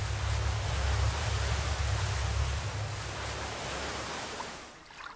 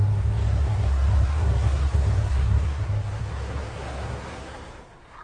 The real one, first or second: first